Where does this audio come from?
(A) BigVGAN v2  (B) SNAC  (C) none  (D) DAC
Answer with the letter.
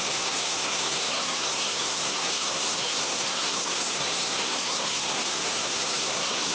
B